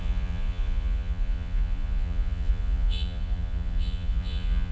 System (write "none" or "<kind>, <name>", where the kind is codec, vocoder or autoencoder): vocoder, Vocos